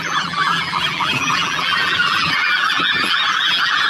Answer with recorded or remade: remade